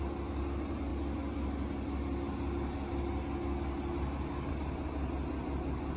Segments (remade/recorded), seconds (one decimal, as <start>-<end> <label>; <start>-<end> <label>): 0.0-6.0 recorded